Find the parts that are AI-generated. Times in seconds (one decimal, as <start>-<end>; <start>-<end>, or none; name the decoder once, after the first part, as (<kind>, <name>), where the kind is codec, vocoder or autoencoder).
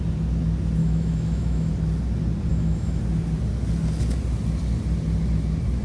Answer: 0.8-1.7 (autoencoder, DAC-VAE); 2.5-3.0